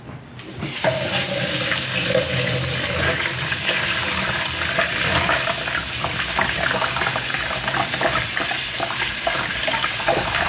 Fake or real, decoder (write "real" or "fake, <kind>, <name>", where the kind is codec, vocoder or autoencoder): real